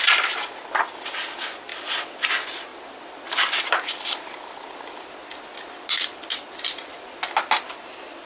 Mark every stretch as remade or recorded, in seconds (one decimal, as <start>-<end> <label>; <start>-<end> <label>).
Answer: 0.0-1.7 recorded; 1.7-2.3 remade; 2.3-8.3 recorded